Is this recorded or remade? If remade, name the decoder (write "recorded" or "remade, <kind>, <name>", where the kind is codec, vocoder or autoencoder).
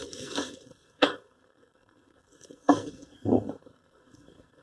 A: remade, codec, SNAC